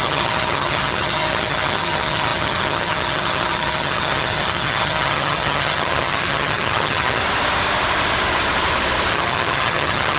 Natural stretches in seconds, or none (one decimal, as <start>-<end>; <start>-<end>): 7.2-9.1